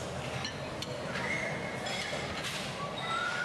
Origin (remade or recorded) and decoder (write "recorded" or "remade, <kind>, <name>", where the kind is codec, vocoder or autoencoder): recorded